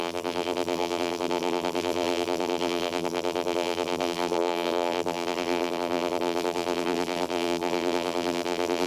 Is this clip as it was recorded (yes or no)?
no